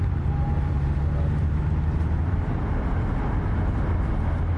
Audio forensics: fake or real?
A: real